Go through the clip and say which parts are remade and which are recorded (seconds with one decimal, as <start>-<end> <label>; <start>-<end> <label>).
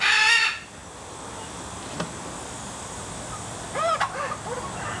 0.0-5.0 recorded